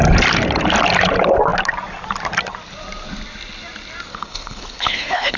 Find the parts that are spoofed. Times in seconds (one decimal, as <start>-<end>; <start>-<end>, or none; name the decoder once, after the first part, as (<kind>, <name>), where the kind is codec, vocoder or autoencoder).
4.1-5.4 (codec, HILCodec)